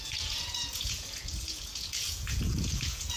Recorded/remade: remade